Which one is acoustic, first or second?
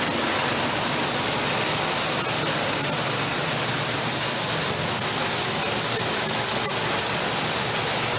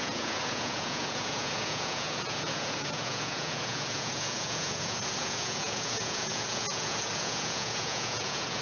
first